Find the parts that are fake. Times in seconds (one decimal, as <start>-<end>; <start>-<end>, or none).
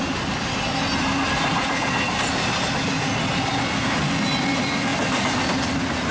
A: none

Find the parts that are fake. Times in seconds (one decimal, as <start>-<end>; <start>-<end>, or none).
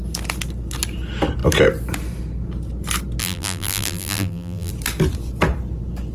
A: 3.2-4.7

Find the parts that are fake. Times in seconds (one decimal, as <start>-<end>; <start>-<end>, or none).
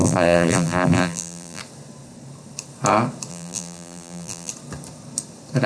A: 0.0-1.6; 3.3-4.5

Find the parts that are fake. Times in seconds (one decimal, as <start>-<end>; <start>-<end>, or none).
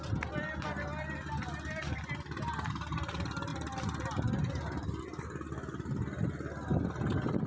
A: none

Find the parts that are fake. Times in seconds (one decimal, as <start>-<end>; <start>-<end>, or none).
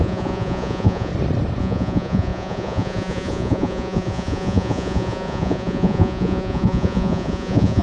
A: 0.0-1.1; 1.6-7.8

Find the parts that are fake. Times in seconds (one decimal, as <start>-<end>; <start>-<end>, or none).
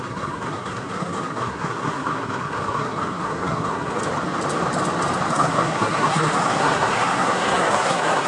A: 0.0-4.0; 5.3-8.3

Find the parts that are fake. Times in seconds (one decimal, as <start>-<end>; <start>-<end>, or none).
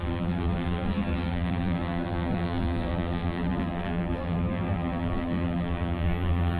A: 0.0-6.6